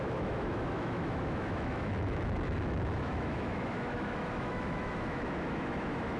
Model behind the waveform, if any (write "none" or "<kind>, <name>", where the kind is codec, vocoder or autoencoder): autoencoder, DAC-VAE